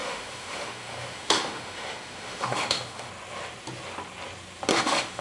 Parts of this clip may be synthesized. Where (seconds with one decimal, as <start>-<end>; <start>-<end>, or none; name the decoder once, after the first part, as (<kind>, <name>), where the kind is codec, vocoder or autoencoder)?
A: 0.0-3.1 (autoencoder, DAC-VAE); 4.7-5.2